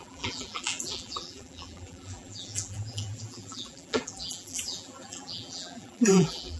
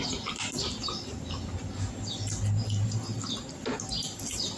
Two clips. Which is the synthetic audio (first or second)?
first